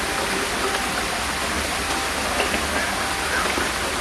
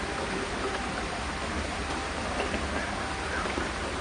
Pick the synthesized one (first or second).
second